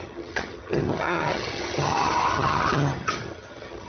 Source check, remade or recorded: remade